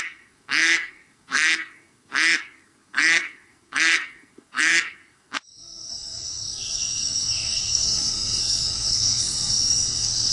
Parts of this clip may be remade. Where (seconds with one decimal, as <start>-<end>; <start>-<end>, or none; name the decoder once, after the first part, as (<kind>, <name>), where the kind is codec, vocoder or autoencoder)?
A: 0.0-10.3 (codec, SNAC)